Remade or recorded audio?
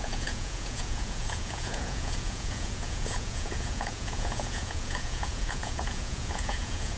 remade